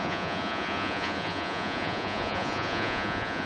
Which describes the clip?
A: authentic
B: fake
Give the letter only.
B